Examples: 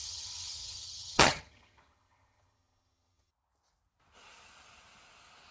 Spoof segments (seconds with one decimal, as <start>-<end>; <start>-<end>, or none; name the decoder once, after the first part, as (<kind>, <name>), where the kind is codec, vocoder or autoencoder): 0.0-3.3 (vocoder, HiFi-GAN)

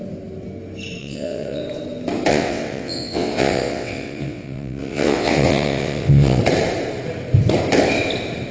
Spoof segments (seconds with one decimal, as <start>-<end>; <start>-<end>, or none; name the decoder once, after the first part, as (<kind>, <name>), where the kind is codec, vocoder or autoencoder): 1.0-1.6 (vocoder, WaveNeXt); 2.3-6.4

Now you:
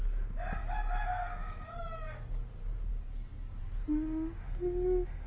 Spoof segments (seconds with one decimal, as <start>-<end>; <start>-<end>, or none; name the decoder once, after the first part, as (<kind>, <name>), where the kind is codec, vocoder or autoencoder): 0.6-1.8 (codec, DAC); 2.9-3.6

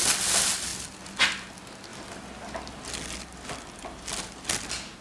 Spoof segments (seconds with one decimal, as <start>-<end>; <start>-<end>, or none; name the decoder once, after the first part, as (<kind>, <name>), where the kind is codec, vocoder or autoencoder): none